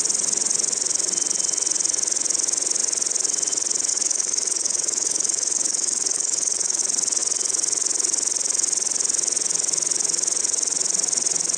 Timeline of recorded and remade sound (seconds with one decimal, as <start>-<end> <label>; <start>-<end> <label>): 0.0-3.9 recorded; 3.9-6.8 remade; 6.8-11.6 recorded

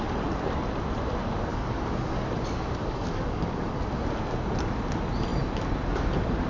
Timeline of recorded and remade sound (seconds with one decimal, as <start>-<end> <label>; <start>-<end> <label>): 0.0-1.5 recorded; 1.5-2.2 remade; 2.2-2.8 recorded; 2.8-3.8 remade; 3.8-6.5 recorded

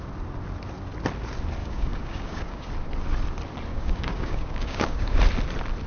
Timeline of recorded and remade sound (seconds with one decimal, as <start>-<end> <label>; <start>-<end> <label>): 0.0-1.6 recorded; 1.6-2.7 remade; 2.7-3.7 recorded; 3.7-5.2 remade; 5.2-5.9 recorded

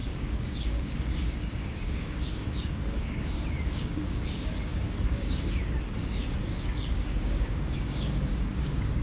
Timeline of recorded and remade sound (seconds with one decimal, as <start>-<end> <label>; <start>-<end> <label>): 0.0-9.0 remade